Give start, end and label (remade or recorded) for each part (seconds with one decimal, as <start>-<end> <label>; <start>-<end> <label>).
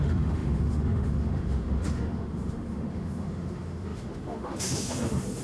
0.0-5.4 remade